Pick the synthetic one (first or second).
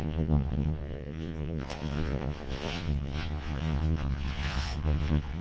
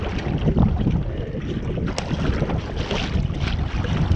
first